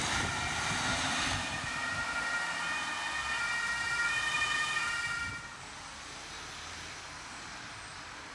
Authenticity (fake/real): real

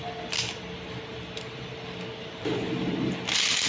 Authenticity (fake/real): real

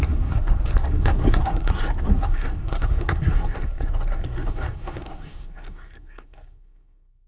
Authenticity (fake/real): fake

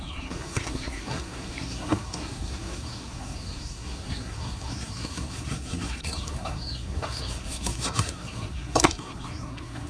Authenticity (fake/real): fake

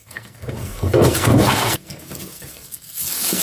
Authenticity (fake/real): fake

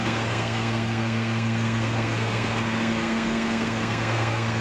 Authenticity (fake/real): fake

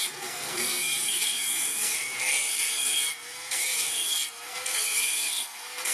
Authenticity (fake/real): fake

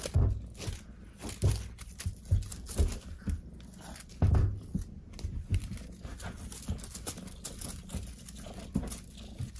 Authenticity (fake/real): real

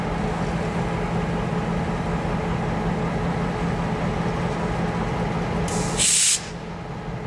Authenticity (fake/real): real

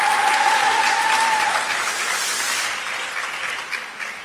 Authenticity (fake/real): real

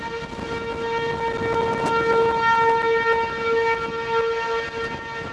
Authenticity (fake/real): real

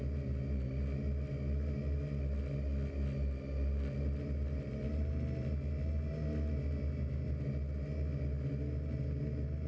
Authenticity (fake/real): real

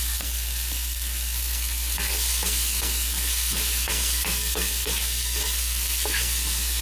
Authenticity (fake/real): fake